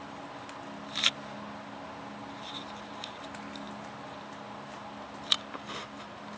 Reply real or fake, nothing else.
real